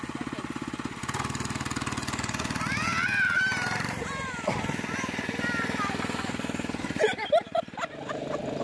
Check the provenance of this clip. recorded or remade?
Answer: recorded